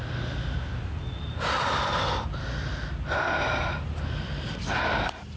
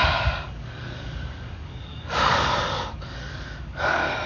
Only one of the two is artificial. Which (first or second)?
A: second